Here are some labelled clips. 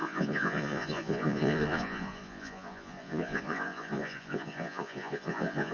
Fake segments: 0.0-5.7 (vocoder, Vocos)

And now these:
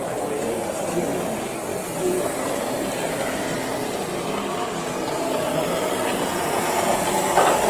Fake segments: 6.1-7.1 (vocoder, Vocos)

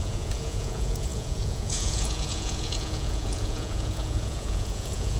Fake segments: 0.0-5.2 (vocoder, Vocos)

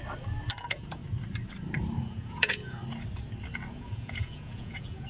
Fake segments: 0.5-1.0 (vocoder, Vocos); 2.0-2.8; 3.7-5.1